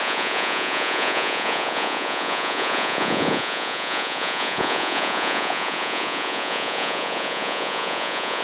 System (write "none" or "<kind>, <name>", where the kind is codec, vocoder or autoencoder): vocoder, Vocos